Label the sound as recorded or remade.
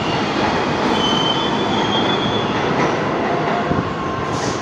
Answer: recorded